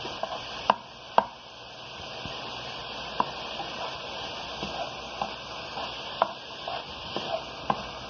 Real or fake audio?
real